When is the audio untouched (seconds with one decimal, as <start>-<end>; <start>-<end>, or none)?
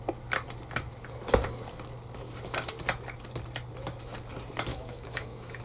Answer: 0.0-4.7